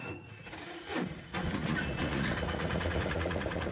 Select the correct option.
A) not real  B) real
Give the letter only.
A